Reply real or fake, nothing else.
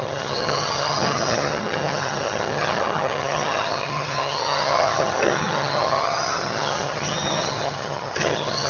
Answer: fake